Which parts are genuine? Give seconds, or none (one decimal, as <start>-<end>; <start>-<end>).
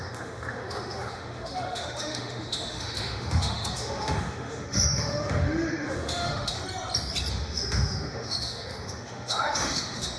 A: 6.6-7.3